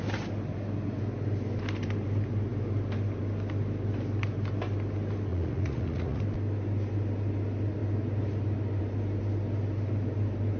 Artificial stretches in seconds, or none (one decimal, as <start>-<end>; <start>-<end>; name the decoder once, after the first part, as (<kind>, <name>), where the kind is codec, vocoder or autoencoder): 5.3-6.2 (vocoder, Vocos)

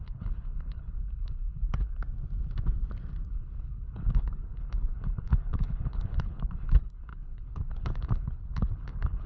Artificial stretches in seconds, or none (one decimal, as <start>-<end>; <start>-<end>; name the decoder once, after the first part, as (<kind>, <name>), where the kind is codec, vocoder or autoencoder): 0.0-2.0 (codec, HILCodec); 3.3-9.3

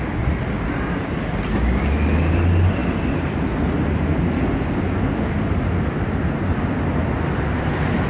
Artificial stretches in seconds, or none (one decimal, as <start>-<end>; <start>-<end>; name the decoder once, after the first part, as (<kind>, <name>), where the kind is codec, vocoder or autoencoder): none

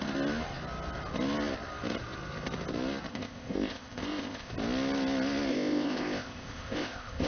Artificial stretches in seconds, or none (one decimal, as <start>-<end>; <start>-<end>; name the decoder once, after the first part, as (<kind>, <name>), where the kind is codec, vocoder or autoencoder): 3.1-4.5 (codec, ZipCodec); 5.5-7.3

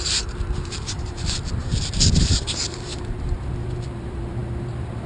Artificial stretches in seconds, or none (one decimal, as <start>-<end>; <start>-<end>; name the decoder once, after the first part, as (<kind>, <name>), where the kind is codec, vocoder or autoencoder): 0.0-1.7 (vocoder, BigVGAN v2); 2.3-5.1